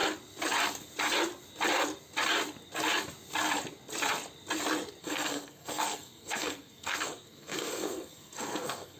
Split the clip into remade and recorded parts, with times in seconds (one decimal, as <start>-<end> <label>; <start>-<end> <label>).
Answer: 0.0-5.0 recorded; 5.0-9.0 remade